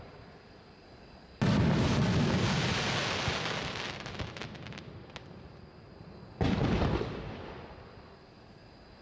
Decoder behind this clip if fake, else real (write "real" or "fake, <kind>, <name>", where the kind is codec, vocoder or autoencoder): real